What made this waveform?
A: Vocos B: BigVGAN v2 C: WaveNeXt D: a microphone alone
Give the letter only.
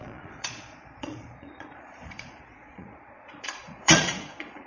A